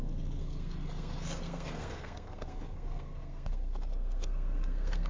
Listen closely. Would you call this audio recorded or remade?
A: remade